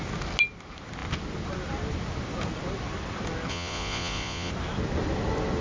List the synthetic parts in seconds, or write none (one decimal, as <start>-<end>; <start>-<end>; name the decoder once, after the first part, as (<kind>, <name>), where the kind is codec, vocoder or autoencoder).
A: 3.5-4.5 (vocoder, Vocos)